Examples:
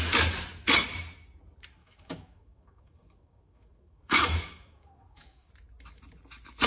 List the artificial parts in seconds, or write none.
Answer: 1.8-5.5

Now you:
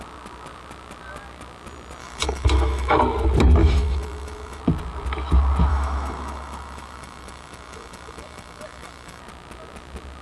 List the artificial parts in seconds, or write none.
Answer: 2.0-3.0; 3.6-4.6; 5.7-9.2